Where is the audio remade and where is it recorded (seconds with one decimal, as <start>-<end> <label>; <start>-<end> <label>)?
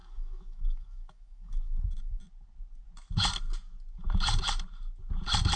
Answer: 0.0-2.2 remade; 2.2-5.6 recorded